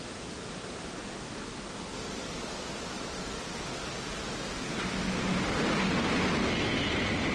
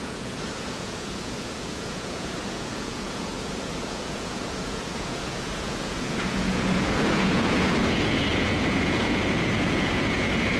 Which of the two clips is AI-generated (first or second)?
second